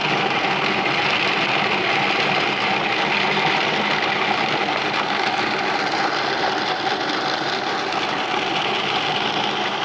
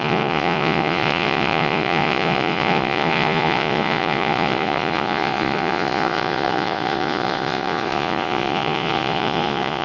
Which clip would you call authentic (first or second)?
first